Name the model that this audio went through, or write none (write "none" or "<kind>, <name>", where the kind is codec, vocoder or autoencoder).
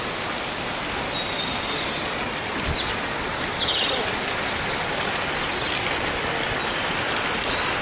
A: none